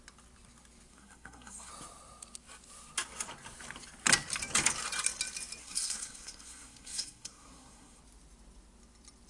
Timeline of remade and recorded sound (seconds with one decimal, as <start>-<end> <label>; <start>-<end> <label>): 0.0-0.9 recorded; 0.9-1.7 remade; 1.7-5.6 recorded; 5.6-8.0 remade; 8.0-9.3 recorded